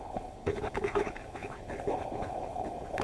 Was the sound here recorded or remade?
remade